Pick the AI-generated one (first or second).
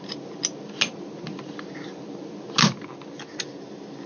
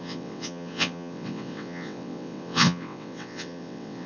second